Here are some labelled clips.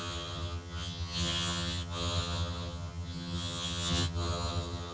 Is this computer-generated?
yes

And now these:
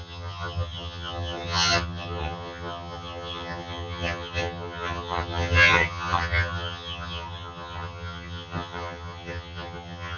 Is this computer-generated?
yes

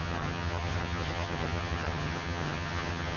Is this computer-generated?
yes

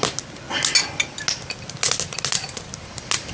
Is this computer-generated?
no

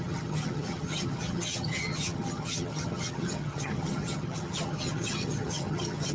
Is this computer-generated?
yes